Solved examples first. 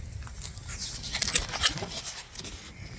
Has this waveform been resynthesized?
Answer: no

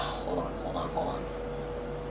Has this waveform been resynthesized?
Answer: no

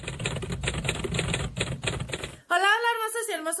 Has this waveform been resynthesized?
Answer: no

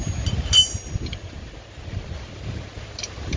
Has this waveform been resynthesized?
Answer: no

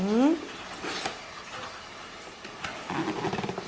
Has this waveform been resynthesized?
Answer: no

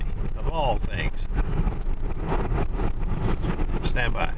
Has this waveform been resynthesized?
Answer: no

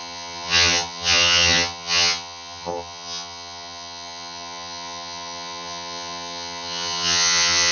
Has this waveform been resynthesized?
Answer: yes